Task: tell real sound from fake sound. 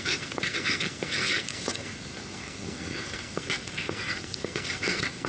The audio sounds fake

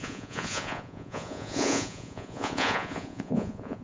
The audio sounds fake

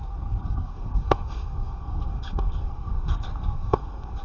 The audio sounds fake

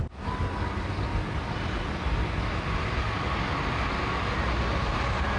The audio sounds real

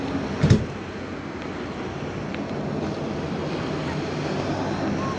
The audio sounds real